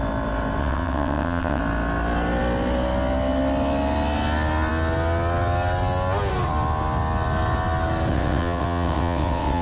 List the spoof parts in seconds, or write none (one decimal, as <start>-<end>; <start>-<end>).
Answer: 0.6-1.6; 8.1-9.6